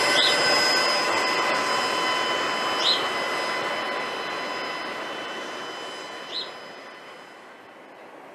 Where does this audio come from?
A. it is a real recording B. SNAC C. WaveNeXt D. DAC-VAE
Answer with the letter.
A